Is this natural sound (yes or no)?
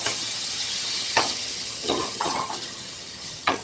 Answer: no